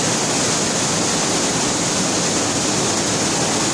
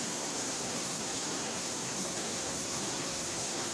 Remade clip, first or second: second